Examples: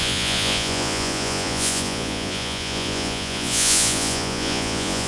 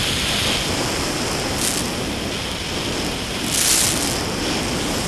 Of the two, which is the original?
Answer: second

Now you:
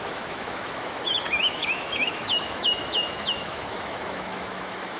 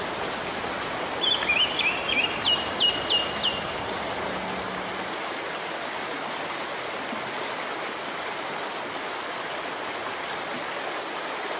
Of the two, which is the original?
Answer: second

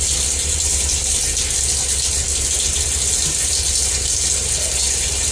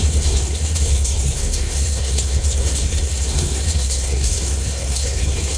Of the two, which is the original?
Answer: first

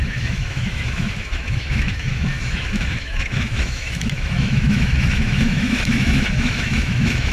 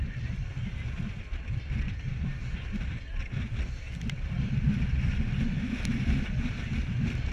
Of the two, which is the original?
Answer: second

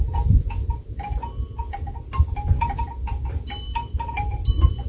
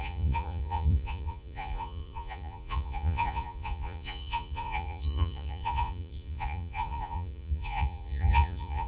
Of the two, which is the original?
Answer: first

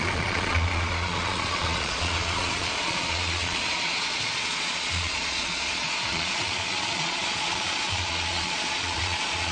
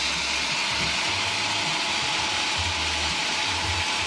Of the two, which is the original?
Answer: second